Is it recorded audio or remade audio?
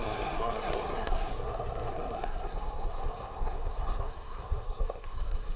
remade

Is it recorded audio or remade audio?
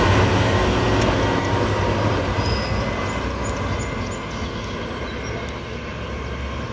recorded